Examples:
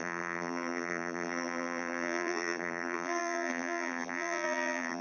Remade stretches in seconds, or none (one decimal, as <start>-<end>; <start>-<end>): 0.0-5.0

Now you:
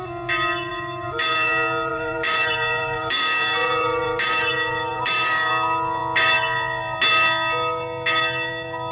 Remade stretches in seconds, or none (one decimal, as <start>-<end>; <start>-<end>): 0.7-1.5; 1.9-5.5

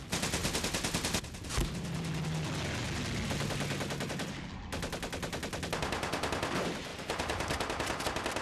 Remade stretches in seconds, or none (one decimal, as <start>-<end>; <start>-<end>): 6.9-8.0

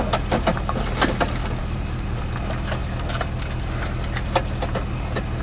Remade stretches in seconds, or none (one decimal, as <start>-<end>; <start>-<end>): 1.6-2.4

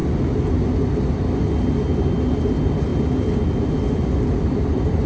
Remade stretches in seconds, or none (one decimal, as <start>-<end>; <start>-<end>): 2.4-2.9; 3.7-5.1